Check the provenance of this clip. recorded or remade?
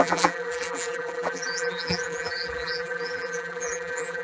remade